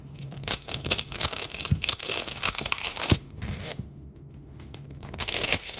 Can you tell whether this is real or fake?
fake